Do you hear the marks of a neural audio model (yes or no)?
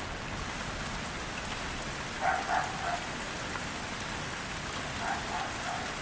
no